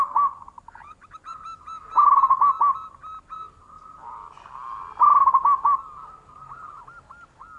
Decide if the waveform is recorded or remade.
recorded